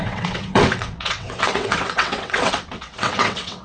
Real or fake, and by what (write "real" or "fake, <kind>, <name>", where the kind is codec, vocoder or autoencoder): fake, vocoder, WaveNeXt